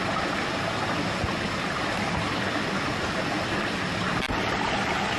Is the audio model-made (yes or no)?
no